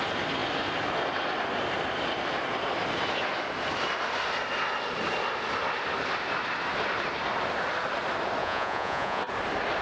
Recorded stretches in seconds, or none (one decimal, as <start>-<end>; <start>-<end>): 0.0-8.4; 9.2-9.8